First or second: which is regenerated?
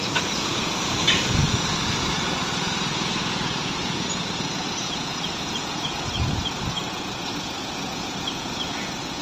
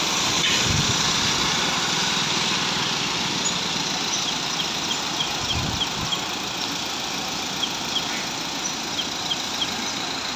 first